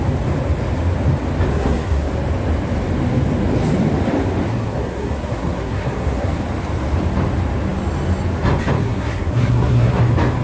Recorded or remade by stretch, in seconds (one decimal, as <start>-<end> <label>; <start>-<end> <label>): 0.0-1.5 recorded; 1.5-2.1 remade; 2.1-4.5 recorded; 4.5-6.4 remade; 6.4-8.8 recorded; 8.8-10.0 remade; 10.0-10.4 recorded